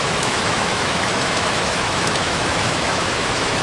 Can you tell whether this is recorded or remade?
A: remade